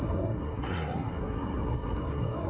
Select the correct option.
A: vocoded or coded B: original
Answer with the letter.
A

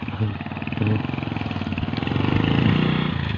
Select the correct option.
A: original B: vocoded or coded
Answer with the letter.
A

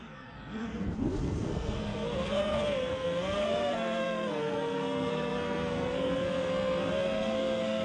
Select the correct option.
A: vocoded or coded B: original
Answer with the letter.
A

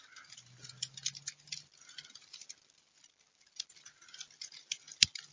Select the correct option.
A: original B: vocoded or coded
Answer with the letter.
A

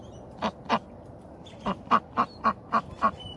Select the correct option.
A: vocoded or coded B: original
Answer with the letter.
B